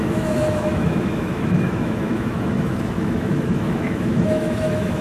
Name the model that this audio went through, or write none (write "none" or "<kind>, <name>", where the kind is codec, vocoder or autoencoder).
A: autoencoder, DAC-VAE